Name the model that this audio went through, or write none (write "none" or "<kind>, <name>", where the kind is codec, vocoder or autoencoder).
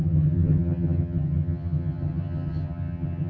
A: vocoder, HiFi-GAN